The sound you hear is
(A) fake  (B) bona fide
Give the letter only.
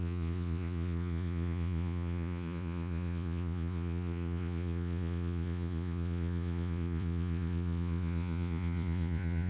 A